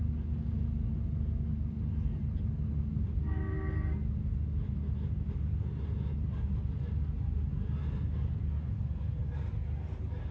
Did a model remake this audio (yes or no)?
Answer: no